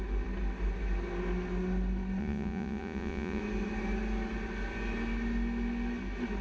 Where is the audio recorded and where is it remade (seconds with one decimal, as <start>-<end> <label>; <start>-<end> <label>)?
0.0-2.2 recorded; 2.2-3.4 remade; 3.4-6.4 recorded

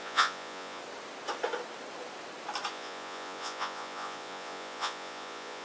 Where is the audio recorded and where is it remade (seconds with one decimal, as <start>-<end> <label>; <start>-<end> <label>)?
0.0-0.8 remade; 0.8-2.7 recorded; 2.7-5.6 remade

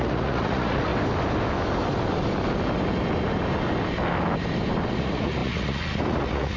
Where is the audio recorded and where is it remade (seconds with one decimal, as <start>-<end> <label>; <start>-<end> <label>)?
0.0-0.9 remade; 0.9-4.9 recorded; 4.9-6.6 remade

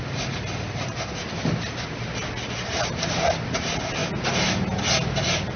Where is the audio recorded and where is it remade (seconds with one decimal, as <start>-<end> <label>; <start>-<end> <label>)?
0.0-5.6 recorded

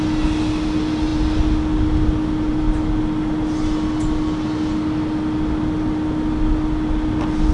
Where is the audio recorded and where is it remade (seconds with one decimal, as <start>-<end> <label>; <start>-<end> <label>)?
0.0-7.5 recorded

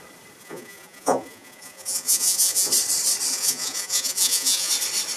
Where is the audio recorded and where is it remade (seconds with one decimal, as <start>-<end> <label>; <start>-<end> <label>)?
0.0-0.4 recorded; 0.4-2.7 remade; 2.7-3.3 recorded; 3.3-4.7 remade; 4.7-5.2 recorded

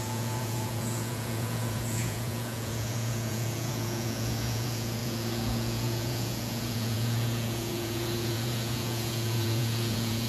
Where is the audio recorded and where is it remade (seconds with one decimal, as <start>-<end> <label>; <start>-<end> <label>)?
0.0-10.3 remade

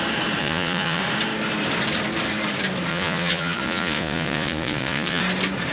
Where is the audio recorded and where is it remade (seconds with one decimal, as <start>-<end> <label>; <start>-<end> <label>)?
0.0-0.4 recorded; 0.4-1.0 remade; 1.0-2.9 recorded; 2.9-5.2 remade; 5.2-5.7 recorded